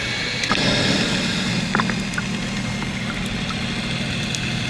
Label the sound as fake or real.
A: real